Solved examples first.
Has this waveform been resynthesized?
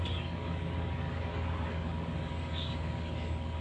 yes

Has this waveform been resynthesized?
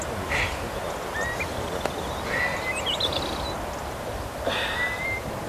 no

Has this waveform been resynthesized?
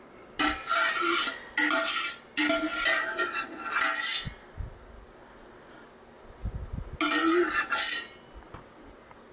no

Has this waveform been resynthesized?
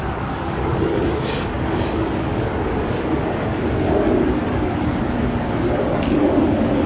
yes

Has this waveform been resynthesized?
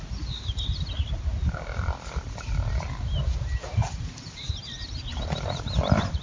no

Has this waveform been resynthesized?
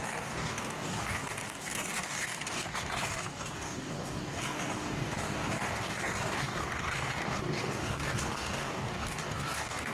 yes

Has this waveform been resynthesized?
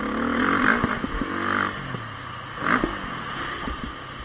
no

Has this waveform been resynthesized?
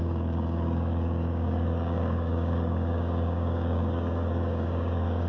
yes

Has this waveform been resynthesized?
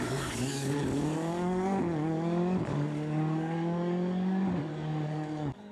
yes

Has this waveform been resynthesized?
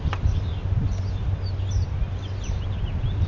no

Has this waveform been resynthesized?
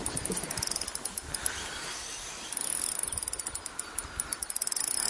no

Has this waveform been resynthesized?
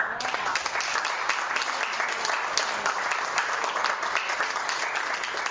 no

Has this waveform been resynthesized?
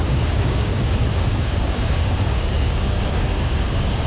yes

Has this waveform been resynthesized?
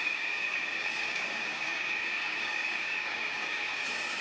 yes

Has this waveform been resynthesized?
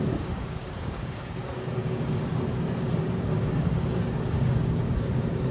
yes